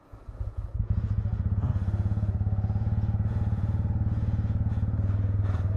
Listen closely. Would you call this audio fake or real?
fake